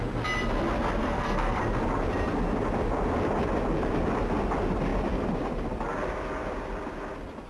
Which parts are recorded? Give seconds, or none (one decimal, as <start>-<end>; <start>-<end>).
0.0-1.0; 1.6-7.5